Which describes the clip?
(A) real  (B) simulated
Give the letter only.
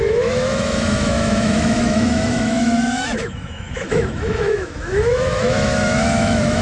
B